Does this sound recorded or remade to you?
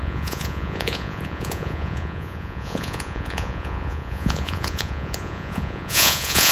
remade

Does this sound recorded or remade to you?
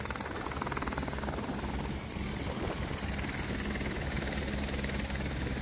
recorded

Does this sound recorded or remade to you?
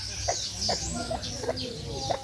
recorded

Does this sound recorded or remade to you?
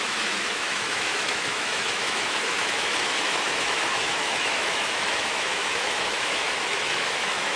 remade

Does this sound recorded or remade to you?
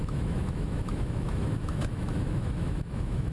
remade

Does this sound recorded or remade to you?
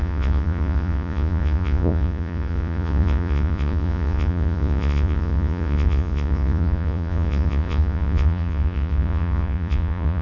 remade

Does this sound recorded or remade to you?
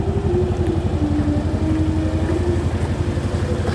recorded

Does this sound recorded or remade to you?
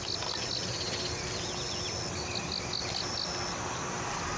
recorded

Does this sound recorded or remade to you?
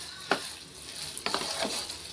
recorded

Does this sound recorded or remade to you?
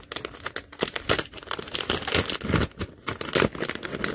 recorded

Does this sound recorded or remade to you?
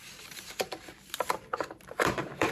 remade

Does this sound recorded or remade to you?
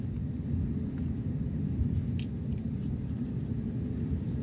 recorded